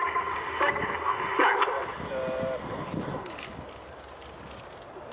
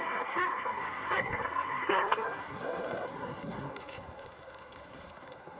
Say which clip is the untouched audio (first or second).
first